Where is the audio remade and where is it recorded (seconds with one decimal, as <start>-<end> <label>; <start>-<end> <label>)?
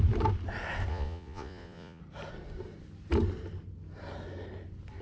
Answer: 0.0-0.9 recorded; 0.9-2.0 remade; 2.0-5.0 recorded